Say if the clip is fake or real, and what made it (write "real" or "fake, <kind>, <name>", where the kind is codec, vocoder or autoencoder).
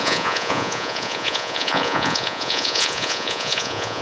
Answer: fake, vocoder, Vocos